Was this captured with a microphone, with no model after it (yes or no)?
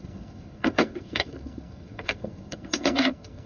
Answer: no